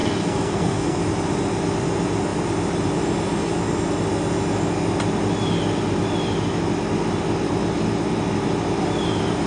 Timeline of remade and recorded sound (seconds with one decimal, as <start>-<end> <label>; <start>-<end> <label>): 0.0-1.0 remade; 1.0-9.5 recorded